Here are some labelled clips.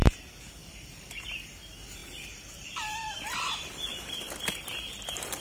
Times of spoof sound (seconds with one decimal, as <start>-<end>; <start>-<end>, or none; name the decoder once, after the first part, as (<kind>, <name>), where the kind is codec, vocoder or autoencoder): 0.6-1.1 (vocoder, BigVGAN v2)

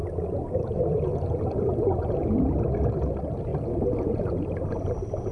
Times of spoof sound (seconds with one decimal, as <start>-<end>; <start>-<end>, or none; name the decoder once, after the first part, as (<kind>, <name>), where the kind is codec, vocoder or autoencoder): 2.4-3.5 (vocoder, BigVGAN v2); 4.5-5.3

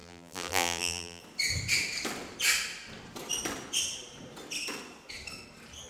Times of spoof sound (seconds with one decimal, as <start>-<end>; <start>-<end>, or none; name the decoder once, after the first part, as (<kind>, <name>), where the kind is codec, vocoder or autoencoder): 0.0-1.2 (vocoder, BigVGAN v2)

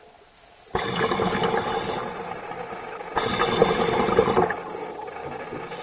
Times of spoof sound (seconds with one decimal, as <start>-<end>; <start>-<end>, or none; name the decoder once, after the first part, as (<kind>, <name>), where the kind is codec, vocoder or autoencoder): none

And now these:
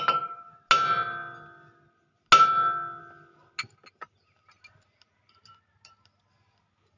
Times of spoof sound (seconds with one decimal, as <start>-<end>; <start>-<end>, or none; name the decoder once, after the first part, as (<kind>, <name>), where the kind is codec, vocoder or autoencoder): none